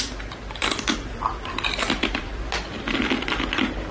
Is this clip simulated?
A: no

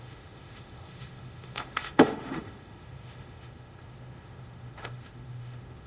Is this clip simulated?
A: yes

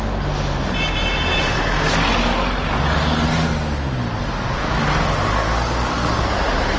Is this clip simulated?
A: no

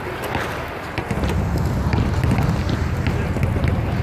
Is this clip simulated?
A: no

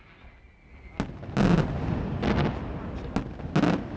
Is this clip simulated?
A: no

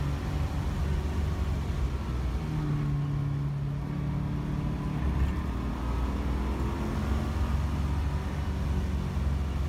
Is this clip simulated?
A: no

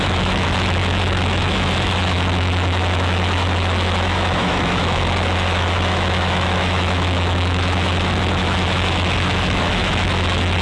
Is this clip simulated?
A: yes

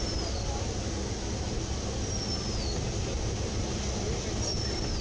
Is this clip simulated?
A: no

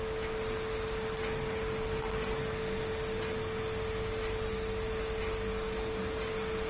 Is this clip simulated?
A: no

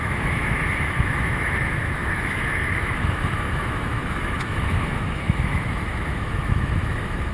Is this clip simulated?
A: yes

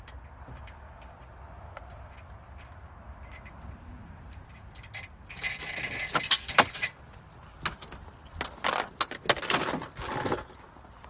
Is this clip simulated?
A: no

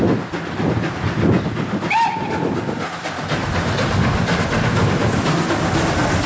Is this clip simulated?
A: no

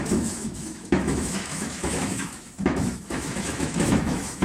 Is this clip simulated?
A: yes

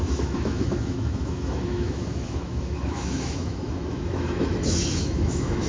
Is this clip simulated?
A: yes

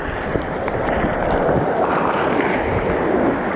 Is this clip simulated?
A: no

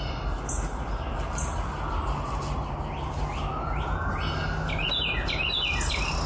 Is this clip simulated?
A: no